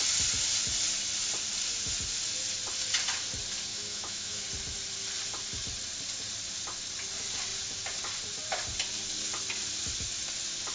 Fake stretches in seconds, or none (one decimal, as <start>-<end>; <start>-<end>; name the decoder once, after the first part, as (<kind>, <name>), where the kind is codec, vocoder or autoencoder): 3.7-4.4 (autoencoder, DAC-VAE)